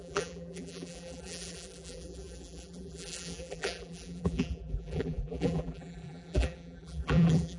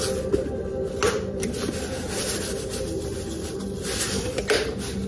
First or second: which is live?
second